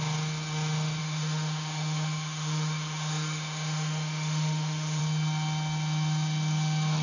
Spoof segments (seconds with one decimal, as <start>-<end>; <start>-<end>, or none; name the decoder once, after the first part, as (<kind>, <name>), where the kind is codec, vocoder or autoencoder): 1.0-5.0 (autoencoder, DAC-VAE)